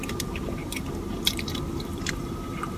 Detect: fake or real fake